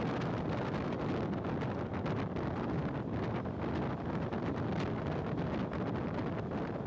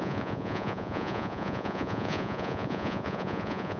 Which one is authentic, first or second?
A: first